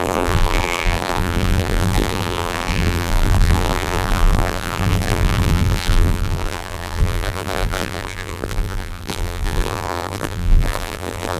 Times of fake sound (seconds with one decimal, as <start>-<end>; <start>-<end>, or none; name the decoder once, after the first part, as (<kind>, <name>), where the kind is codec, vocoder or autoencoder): 0.0-11.4 (vocoder, BigVGAN v2)